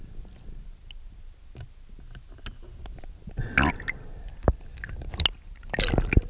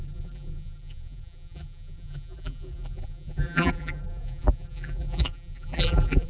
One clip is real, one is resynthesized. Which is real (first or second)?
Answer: first